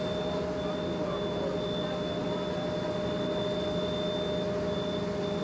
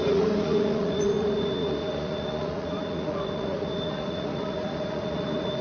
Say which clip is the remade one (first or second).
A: second